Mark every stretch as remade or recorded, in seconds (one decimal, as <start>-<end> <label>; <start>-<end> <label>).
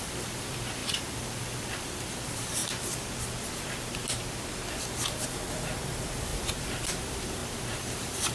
0.0-2.6 remade; 2.6-5.3 recorded; 5.3-8.3 remade